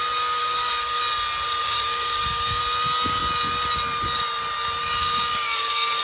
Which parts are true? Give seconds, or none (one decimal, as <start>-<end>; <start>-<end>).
0.0-0.4; 1.0-1.6; 2.6-4.8